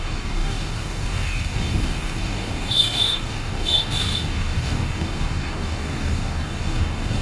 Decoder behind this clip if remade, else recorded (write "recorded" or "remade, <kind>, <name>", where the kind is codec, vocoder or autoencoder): remade, codec, DAC